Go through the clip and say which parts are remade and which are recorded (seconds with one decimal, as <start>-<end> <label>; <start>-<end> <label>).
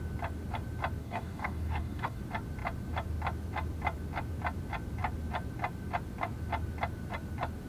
0.0-1.0 recorded; 1.0-2.2 remade; 2.2-7.7 recorded